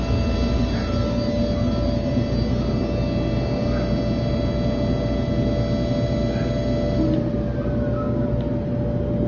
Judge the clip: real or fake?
real